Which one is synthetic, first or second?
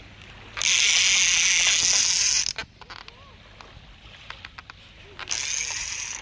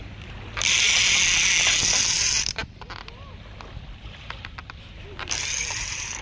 second